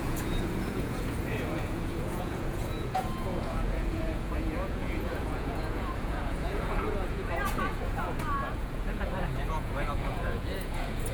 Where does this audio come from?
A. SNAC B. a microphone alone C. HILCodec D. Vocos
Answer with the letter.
D